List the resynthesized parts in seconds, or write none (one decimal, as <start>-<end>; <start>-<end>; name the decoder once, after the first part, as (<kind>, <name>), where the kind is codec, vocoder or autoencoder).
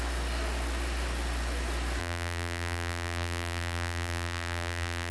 2.0-5.1 (vocoder, BigVGAN v2)